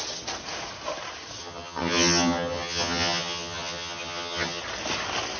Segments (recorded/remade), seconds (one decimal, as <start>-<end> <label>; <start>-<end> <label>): 0.0-1.4 recorded; 1.4-4.6 remade; 4.6-5.4 recorded